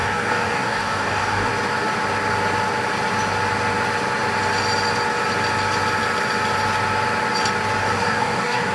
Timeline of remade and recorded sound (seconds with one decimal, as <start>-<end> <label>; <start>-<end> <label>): 0.0-1.5 remade; 1.5-7.8 recorded; 7.8-8.7 remade